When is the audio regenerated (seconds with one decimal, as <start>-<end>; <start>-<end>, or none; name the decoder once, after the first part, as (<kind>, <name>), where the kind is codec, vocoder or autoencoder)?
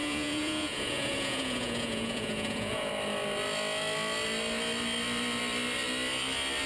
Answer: 0.0-2.9 (vocoder, Vocos)